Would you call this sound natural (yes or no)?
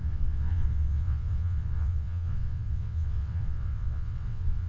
no